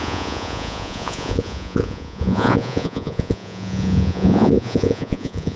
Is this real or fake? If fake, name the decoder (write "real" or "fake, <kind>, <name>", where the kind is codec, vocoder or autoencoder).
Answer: fake, vocoder, Vocos